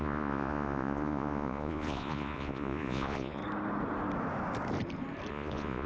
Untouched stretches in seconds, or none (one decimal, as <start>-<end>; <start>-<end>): 3.4-5.3

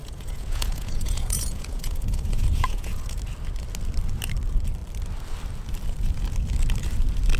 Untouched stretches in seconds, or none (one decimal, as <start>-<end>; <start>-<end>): 3.2-7.4